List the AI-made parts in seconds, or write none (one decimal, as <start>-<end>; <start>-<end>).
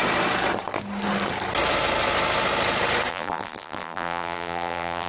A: 3.1-5.1